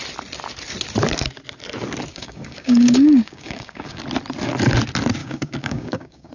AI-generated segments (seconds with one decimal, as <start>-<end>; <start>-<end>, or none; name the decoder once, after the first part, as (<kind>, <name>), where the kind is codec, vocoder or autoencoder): 2.1-4.0 (codec, DAC); 5.2-6.3